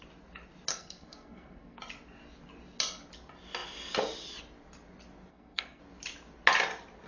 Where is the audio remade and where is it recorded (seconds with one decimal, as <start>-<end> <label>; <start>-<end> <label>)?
0.0-0.7 recorded; 0.7-1.8 remade; 1.8-5.3 recorded; 5.3-5.8 remade; 5.8-7.1 recorded